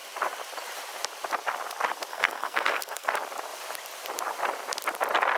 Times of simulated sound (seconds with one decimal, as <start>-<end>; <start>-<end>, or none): 2.1-3.1